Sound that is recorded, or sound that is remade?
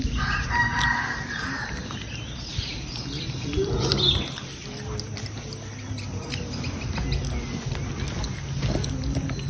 recorded